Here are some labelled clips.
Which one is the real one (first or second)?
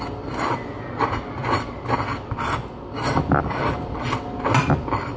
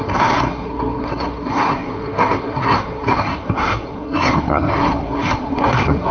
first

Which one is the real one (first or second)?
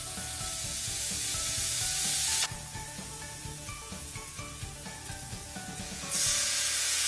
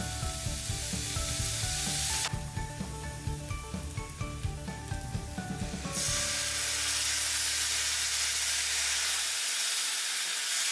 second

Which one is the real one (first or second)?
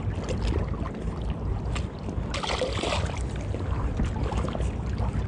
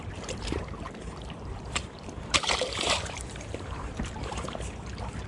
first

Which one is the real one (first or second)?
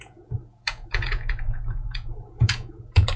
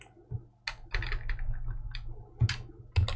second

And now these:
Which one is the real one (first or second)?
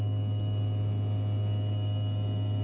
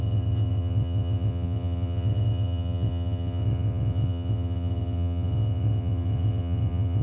first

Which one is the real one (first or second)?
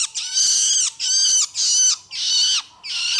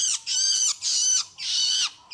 first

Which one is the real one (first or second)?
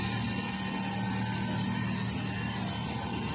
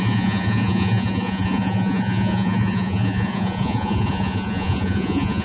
first